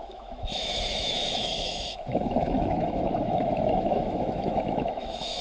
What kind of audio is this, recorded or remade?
remade